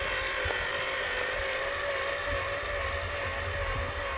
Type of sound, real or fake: real